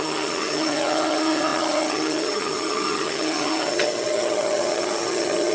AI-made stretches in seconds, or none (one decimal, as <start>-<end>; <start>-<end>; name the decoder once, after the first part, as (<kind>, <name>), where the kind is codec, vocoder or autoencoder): 0.0-5.5 (vocoder, HiFi-GAN)